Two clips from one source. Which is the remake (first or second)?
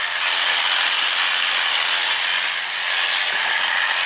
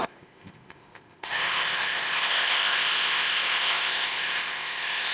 second